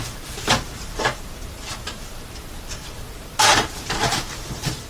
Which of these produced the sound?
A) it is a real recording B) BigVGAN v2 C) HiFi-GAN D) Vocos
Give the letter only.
B